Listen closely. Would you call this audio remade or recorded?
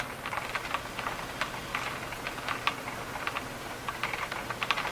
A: recorded